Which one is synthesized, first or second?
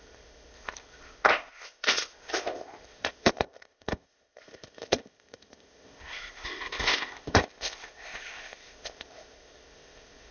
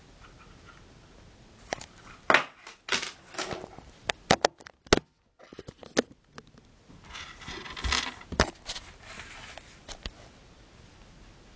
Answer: first